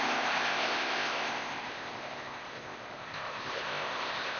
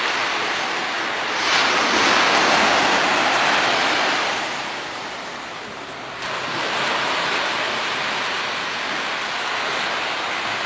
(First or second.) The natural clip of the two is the second